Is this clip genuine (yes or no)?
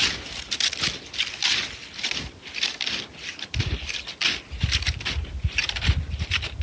yes